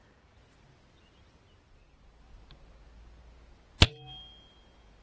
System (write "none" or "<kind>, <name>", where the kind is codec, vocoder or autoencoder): none